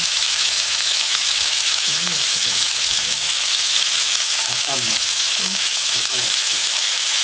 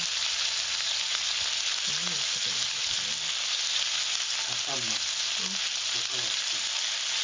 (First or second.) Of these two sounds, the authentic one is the second